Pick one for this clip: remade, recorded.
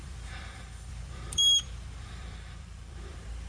remade